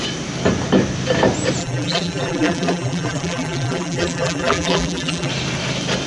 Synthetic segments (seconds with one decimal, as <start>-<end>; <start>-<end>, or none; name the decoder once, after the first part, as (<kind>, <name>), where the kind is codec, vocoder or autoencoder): 1.6-5.3 (vocoder, BigVGAN v2)